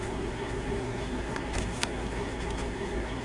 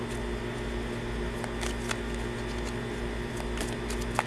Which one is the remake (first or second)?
first